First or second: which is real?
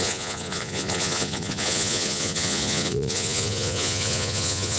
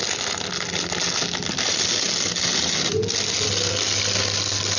second